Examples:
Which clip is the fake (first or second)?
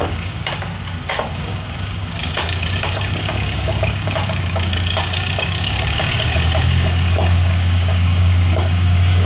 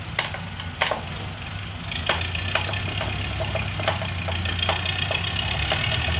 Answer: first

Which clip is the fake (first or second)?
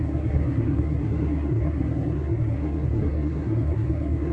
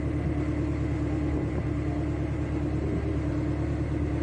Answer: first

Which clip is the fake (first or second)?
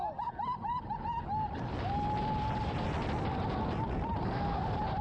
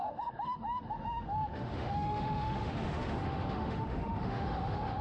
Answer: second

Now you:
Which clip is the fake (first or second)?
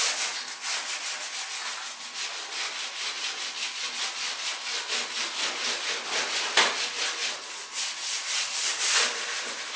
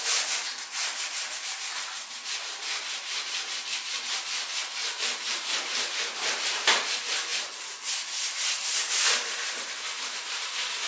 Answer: second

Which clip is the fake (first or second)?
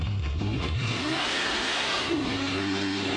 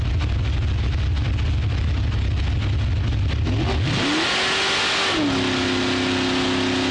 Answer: first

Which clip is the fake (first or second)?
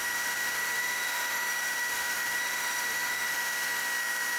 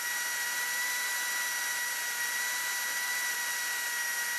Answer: first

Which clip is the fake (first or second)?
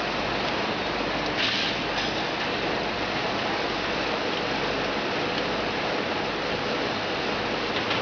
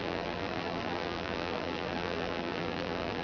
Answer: second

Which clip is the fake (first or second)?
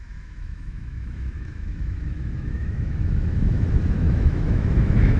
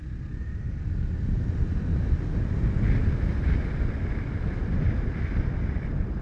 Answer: first